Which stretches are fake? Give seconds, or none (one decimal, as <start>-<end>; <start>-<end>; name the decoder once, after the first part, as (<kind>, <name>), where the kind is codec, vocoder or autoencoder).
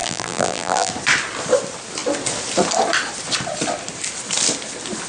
0.0-0.9 (vocoder, BigVGAN v2)